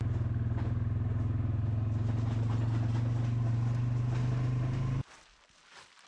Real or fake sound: real